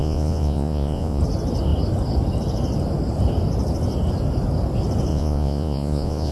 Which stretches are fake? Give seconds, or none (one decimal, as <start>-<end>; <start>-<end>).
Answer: 0.0-1.2; 5.1-6.3